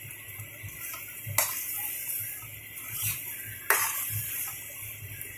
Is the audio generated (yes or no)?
no